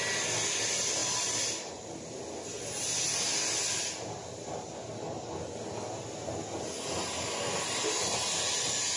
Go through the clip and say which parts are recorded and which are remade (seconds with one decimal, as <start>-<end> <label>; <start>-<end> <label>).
0.0-1.0 recorded; 1.0-1.7 remade; 1.7-3.8 recorded; 3.8-4.6 remade; 4.6-9.0 recorded